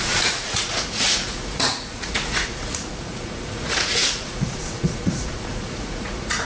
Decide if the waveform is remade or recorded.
remade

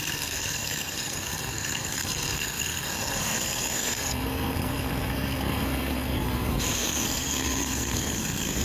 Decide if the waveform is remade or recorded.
remade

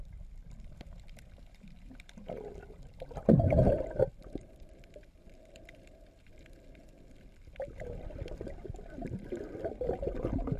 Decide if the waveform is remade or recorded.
remade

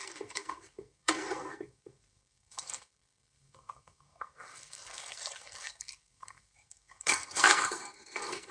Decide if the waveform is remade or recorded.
remade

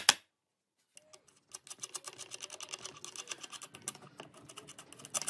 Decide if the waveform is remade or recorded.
recorded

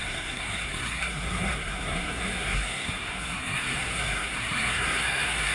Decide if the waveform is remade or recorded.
remade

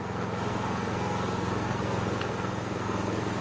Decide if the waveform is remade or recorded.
remade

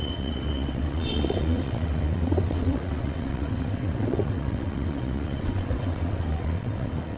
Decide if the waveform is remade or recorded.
remade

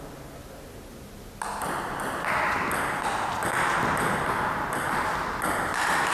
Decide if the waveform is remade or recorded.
recorded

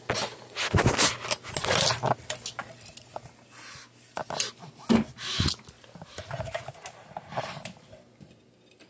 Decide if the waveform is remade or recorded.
recorded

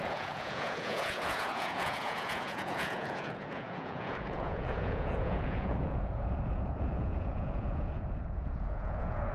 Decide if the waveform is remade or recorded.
remade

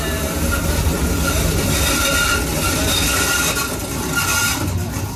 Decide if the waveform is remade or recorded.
recorded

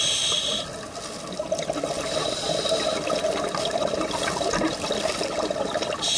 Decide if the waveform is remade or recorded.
recorded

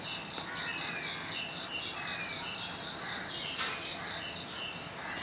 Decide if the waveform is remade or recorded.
recorded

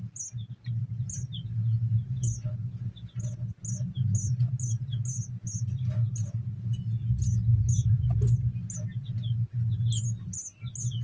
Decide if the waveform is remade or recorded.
recorded